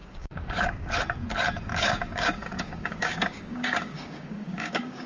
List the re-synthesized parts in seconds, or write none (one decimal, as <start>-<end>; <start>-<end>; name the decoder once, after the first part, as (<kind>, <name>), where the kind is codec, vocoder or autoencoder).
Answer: 0.0-0.9 (codec, DAC); 1.7-5.1